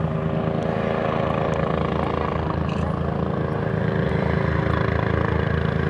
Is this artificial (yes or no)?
no